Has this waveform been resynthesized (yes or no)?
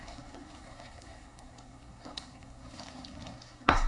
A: yes